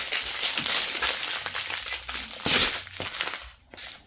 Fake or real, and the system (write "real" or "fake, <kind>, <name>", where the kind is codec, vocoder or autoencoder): real